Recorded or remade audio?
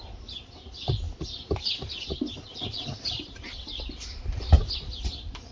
recorded